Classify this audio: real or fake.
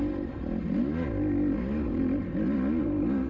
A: real